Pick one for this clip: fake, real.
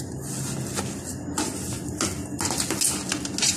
real